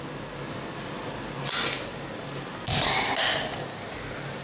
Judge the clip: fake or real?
real